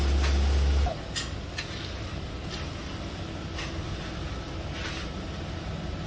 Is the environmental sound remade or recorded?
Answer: recorded